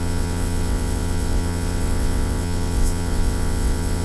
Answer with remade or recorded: remade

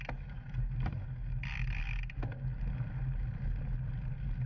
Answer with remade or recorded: recorded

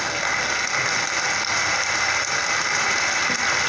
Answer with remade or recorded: recorded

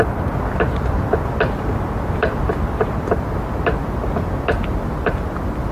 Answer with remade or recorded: recorded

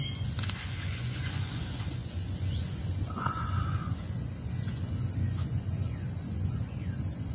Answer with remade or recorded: remade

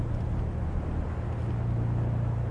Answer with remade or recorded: recorded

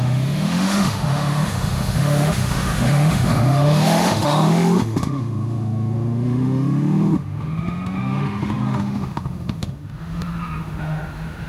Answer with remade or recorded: remade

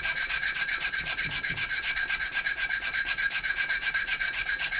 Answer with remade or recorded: remade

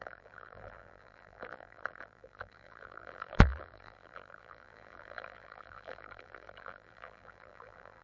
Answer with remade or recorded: remade